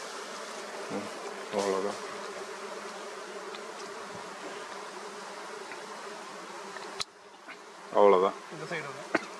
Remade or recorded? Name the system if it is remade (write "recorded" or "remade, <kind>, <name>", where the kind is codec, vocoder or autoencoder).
recorded